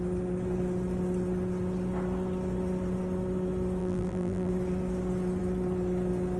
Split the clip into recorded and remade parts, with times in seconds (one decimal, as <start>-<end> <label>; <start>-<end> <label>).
0.0-3.8 recorded; 3.8-4.5 remade; 4.5-6.4 recorded